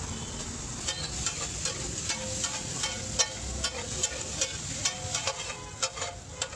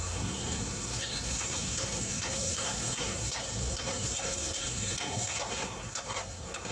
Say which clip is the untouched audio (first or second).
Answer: first